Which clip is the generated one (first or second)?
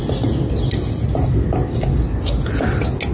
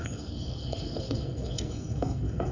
second